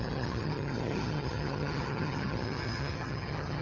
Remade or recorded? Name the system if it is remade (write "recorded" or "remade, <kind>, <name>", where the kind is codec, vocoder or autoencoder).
remade, vocoder, HiFi-GAN